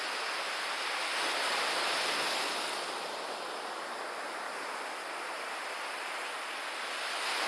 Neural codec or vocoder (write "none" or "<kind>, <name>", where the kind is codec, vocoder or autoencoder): none